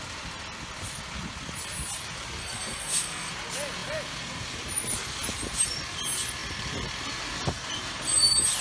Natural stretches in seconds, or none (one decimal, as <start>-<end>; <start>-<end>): 0.0-2.4; 3.3-8.6